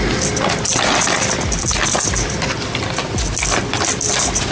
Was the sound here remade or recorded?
recorded